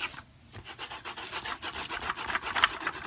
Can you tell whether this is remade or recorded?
recorded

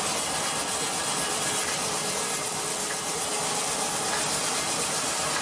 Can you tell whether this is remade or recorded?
recorded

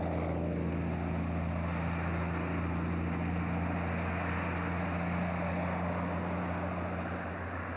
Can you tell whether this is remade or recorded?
recorded